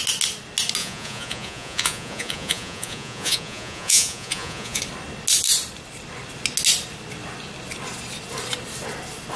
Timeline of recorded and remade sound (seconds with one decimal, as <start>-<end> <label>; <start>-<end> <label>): 0.0-0.8 recorded; 0.8-4.8 remade; 4.8-9.4 recorded